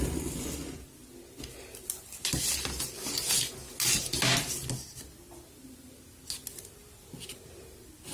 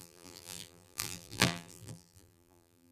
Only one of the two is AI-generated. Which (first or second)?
second